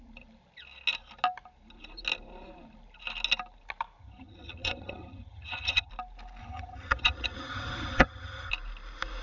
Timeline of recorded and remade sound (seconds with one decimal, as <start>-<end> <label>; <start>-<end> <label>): 0.0-4.0 recorded; 4.0-5.9 remade; 5.9-6.4 recorded; 6.4-8.5 remade; 8.5-9.2 recorded